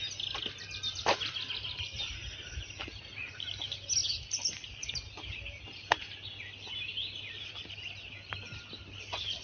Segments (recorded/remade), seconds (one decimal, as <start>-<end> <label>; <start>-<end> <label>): 0.0-9.4 recorded